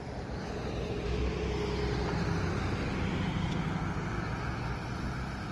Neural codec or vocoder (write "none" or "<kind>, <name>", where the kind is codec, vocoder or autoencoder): none